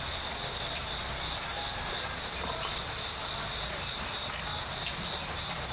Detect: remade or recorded recorded